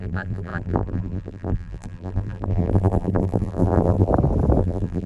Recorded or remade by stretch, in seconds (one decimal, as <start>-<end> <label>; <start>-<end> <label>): 0.0-4.1 remade; 4.1-4.6 recorded; 4.6-5.1 remade

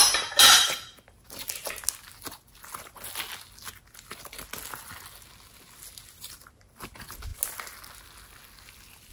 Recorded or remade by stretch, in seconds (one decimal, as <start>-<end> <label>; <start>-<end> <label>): 0.0-9.1 recorded

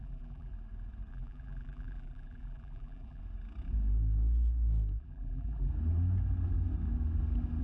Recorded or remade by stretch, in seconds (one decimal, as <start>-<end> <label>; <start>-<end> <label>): 0.0-0.5 remade; 0.5-1.1 recorded; 1.1-3.2 remade; 3.2-5.0 recorded; 5.0-5.7 remade; 5.7-7.6 recorded

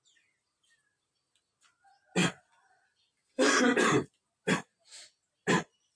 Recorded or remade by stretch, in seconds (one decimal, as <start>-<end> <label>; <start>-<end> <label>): 0.0-2.2 recorded; 2.2-3.5 remade; 3.5-6.0 recorded

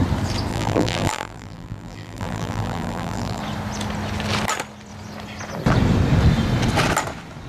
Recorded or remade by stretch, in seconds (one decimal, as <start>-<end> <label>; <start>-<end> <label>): 0.0-0.5 recorded; 0.5-3.4 remade; 3.4-7.5 recorded

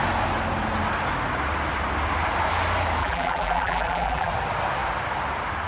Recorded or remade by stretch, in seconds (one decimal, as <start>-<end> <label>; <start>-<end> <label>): 0.0-3.0 recorded; 3.0-4.3 remade; 4.3-5.7 recorded